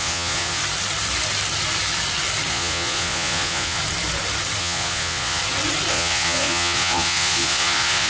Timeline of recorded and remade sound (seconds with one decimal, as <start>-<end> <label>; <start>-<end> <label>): 0.0-0.6 remade; 0.6-2.5 recorded; 2.5-3.8 remade; 3.8-4.6 recorded; 4.6-5.4 remade; 5.4-5.9 recorded; 5.9-8.1 remade